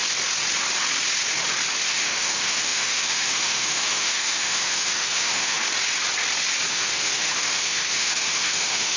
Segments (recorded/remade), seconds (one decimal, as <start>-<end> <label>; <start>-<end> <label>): 0.0-1.9 recorded; 1.9-5.6 remade; 5.6-6.7 recorded; 6.7-9.0 remade